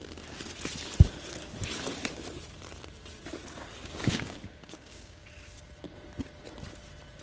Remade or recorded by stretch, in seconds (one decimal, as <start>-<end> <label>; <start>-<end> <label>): 0.0-3.8 recorded; 3.8-5.2 remade; 5.2-7.2 recorded